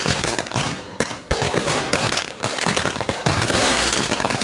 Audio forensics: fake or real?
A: fake